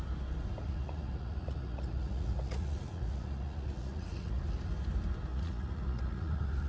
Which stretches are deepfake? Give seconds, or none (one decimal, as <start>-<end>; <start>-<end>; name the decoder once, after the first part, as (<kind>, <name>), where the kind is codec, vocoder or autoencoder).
0.6-4.4 (vocoder, Vocos); 5.3-6.7